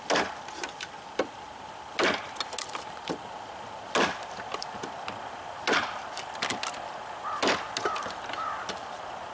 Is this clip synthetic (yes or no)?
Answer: no